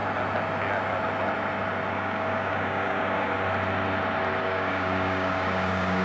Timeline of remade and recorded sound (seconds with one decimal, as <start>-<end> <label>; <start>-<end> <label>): 0.0-1.9 recorded; 1.9-3.3 remade; 3.3-4.4 recorded; 4.4-6.0 remade